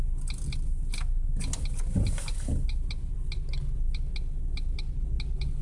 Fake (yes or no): no